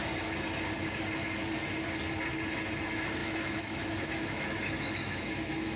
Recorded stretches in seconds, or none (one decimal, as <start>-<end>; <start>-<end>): 0.0-3.2